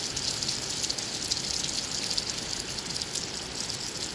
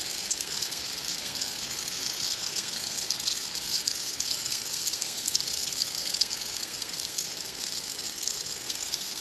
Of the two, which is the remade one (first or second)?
second